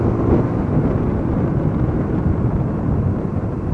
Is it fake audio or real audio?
real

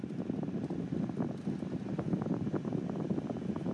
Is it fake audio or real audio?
real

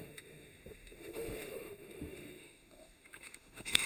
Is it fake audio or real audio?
fake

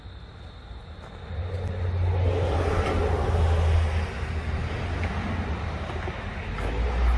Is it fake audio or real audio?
real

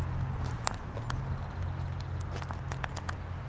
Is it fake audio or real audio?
real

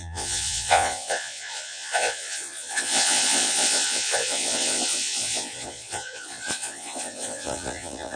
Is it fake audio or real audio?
fake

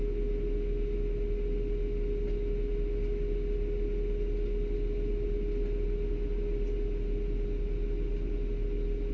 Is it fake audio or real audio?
real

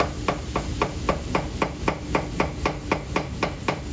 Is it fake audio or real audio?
real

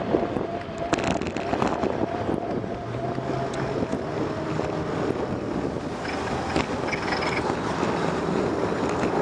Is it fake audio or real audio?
real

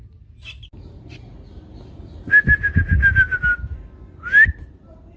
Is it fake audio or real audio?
real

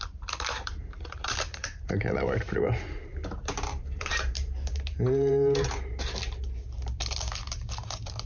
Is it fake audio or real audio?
fake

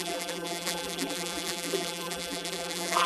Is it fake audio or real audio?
fake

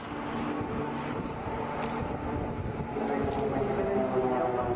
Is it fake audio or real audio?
real